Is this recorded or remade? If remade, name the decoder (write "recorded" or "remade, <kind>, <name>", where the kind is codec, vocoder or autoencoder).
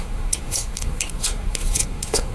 remade, codec, SNAC